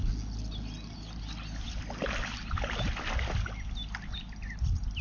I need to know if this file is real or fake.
real